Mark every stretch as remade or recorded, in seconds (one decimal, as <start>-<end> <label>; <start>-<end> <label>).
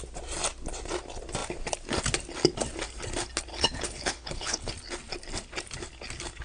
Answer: 0.0-3.5 recorded; 3.5-4.7 remade; 4.7-6.4 recorded